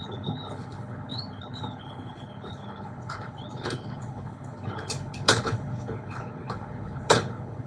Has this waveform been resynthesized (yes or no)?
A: yes